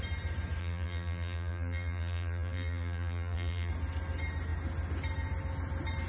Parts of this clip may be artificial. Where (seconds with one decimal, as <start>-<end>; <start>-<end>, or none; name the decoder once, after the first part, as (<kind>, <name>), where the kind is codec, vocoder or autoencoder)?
0.6-3.7 (vocoder, BigVGAN v2)